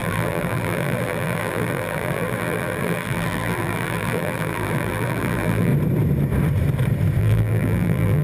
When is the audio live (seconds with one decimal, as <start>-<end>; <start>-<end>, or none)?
5.7-7.2